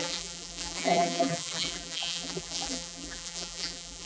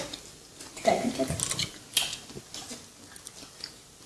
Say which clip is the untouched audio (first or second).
second